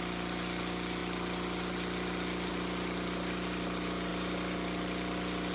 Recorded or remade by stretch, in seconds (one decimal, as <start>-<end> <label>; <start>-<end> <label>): 0.0-5.5 recorded